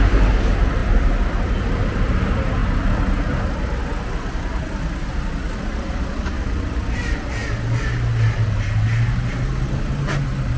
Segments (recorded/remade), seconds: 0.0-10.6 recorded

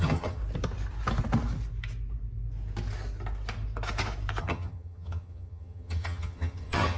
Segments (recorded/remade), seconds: 0.0-0.4 remade; 0.4-4.4 recorded; 4.4-7.0 remade